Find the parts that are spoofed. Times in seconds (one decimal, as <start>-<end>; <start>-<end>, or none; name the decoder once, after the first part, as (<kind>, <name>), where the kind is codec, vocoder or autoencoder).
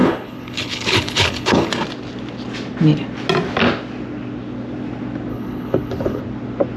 0.0-1.7 (codec, HILCodec); 5.3-6.2